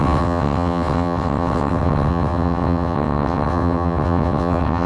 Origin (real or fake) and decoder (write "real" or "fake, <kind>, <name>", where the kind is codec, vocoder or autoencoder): fake, vocoder, WaveNeXt